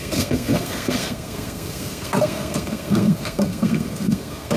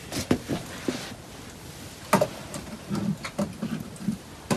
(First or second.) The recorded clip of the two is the second